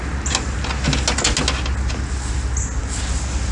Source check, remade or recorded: recorded